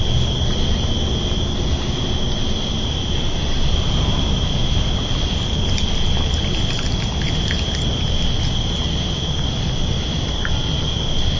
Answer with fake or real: real